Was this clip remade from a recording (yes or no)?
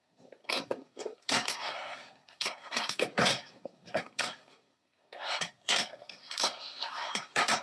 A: yes